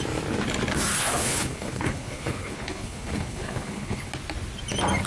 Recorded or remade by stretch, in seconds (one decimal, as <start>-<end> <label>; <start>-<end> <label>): 0.0-1.0 recorded; 1.0-4.1 remade; 4.1-5.1 recorded